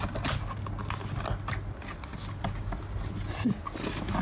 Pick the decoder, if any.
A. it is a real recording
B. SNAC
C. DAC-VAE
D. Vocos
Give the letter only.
A